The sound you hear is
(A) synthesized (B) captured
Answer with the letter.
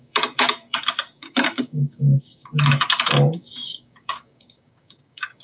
A